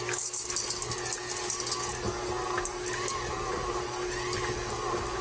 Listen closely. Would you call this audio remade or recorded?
recorded